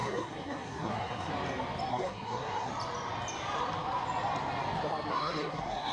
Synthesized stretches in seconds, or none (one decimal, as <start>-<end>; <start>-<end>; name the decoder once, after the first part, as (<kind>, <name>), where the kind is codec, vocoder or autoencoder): 0.0-1.3 (codec, SNAC); 1.9-2.7; 5.1-5.9